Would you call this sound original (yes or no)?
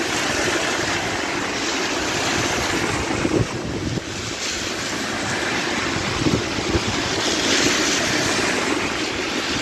yes